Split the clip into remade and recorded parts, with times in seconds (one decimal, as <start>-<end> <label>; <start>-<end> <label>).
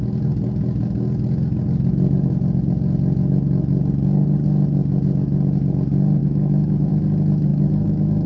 0.0-6.2 recorded; 6.2-6.9 remade; 6.9-7.5 recorded; 7.5-8.3 remade